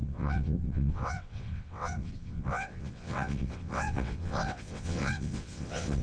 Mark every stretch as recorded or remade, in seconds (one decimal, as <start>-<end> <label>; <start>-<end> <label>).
0.0-6.0 remade